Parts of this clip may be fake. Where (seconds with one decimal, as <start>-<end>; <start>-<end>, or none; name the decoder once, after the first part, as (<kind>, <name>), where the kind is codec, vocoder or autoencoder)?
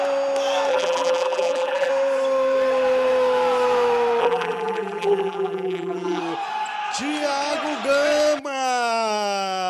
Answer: 0.7-1.9 (vocoder, BigVGAN v2); 4.2-6.2